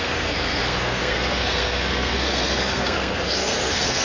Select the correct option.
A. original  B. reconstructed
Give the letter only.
B